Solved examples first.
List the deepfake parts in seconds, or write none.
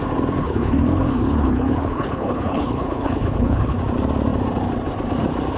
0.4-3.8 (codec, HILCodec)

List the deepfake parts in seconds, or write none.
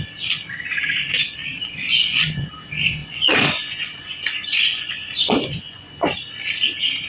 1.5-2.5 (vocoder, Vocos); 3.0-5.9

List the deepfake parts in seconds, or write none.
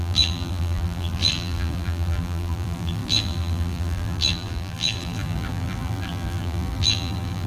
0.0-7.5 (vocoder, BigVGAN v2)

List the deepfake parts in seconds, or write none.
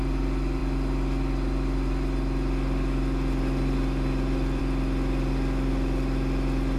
none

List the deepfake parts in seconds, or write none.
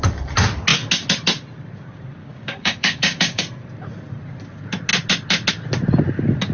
2.2-3.4 (codec, DAC)